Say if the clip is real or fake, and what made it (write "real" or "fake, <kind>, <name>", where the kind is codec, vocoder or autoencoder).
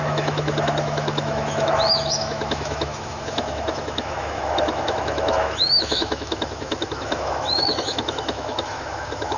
fake, autoencoder, DAC-VAE